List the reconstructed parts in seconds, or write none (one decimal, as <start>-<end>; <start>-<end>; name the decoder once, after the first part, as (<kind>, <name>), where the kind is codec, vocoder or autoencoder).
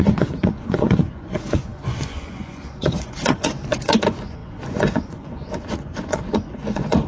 0.0-7.1 (vocoder, Vocos)